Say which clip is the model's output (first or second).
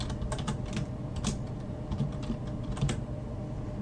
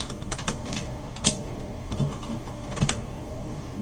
second